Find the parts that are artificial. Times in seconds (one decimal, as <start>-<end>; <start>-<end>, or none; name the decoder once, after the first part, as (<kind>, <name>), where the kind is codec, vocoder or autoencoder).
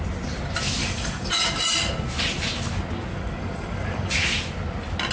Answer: 0.8-1.3 (codec, DAC); 3.1-4.1